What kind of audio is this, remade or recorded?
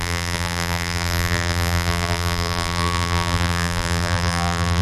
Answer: remade